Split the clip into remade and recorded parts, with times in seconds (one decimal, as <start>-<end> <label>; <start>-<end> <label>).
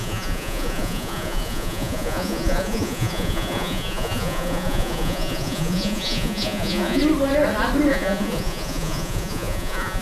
0.0-7.0 remade; 7.0-7.9 recorded; 7.9-10.0 remade